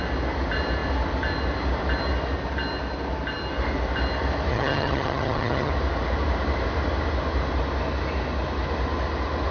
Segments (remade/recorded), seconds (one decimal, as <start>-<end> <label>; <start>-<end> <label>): 0.0-4.5 recorded; 4.5-5.7 remade; 5.7-9.5 recorded

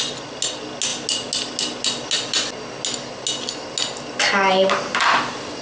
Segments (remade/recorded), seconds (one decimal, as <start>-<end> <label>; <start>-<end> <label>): 0.0-5.6 recorded

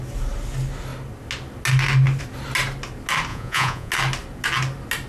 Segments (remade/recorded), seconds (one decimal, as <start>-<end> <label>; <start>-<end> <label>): 0.0-3.3 recorded; 3.3-3.9 remade; 3.9-5.1 recorded

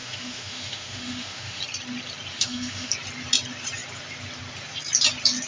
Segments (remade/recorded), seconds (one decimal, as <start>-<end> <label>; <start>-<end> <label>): 0.0-1.6 remade; 1.6-2.3 recorded; 2.3-2.9 remade; 2.9-5.5 recorded

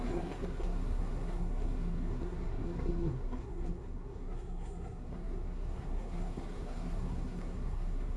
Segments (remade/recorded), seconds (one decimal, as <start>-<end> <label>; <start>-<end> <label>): 0.0-8.2 remade

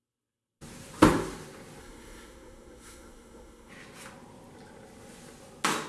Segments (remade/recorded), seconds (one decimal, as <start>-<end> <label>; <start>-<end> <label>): 0.0-1.8 recorded; 1.8-3.7 remade; 3.7-5.9 recorded

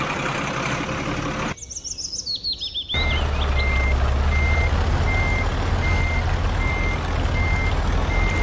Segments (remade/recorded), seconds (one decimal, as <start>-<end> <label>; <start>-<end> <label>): 0.0-8.4 recorded

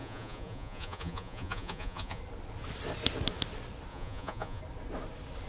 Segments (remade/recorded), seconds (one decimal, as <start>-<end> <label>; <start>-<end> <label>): 0.0-2.2 remade; 2.2-3.9 recorded; 3.9-4.6 remade; 4.6-5.5 recorded